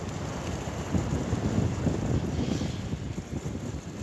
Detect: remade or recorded recorded